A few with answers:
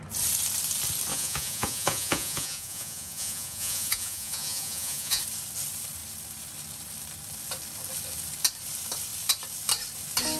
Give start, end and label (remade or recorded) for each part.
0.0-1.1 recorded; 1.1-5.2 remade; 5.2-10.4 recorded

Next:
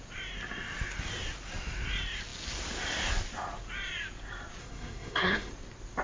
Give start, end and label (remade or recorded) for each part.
0.0-4.6 recorded; 4.6-5.5 remade; 5.5-6.0 recorded

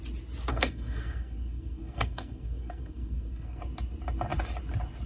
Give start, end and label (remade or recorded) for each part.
0.0-0.5 recorded; 0.5-3.6 remade; 3.6-5.1 recorded

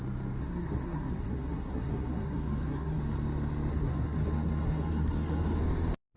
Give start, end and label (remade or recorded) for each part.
0.0-0.4 recorded; 0.4-3.0 remade; 3.0-3.7 recorded; 3.7-5.6 remade; 5.6-6.2 recorded

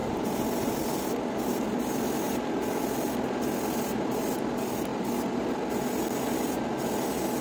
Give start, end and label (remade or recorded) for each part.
0.0-7.4 recorded

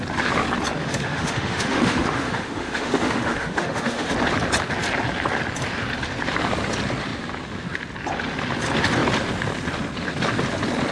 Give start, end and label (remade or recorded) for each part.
0.0-0.8 recorded; 0.8-4.1 remade; 4.1-10.9 recorded

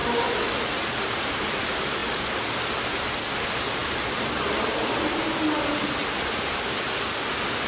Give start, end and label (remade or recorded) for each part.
0.0-7.7 recorded